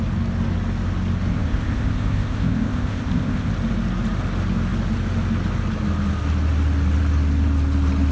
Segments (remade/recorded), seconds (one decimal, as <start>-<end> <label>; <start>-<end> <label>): 0.0-1.3 recorded; 1.3-3.5 remade; 3.5-8.1 recorded